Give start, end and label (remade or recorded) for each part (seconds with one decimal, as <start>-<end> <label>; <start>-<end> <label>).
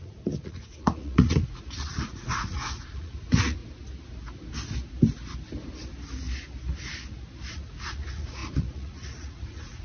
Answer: 0.0-3.6 remade; 3.6-7.5 recorded; 7.5-9.8 remade